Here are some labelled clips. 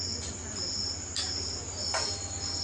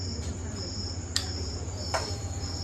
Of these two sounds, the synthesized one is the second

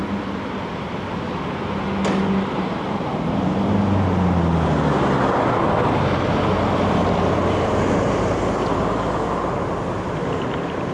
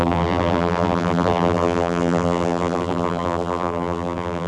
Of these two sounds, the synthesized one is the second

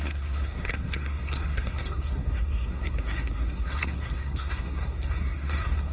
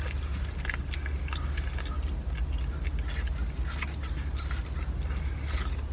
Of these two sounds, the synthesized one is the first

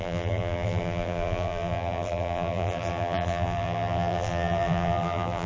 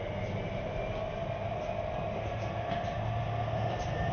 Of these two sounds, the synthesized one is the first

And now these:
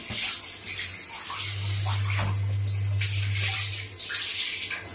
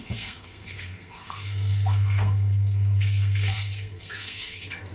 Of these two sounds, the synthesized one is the second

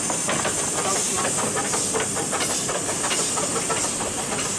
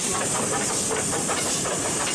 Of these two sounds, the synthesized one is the second